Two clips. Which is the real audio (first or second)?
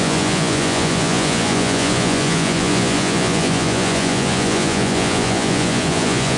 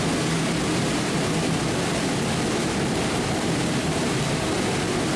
second